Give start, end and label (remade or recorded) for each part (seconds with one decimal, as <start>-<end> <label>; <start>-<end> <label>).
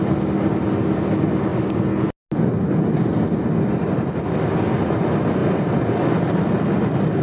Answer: 0.0-5.4 recorded; 5.4-6.1 remade; 6.1-7.2 recorded